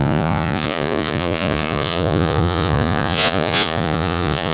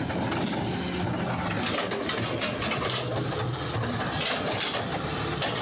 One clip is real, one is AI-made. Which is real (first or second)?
second